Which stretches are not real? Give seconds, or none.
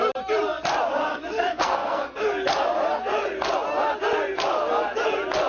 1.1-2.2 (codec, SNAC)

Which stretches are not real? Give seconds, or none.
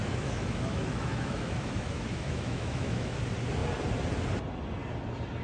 0.0-3.2 (autoencoder, DAC-VAE)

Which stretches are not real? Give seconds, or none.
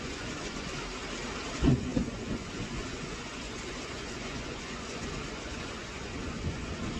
0.0-0.8 (vocoder, Vocos); 1.5-7.0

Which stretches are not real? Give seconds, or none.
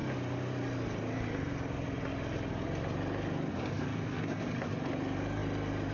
3.9-4.5 (codec, SNAC)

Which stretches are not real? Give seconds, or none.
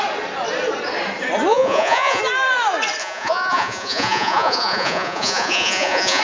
1.5-2.2 (vocoder, Vocos); 3.0-6.2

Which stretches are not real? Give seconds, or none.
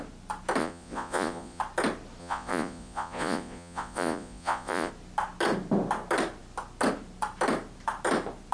0.6-1.6 (vocoder, Vocos); 2.2-4.9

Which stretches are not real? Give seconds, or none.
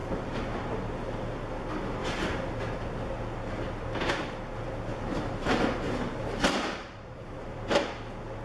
0.0-0.7 (vocoder, BigVGAN v2); 4.9-7.7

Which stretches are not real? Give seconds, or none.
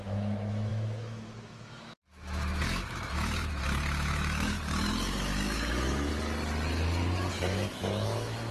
0.0-6.1 (autoencoder, DAC-VAE); 7.3-8.5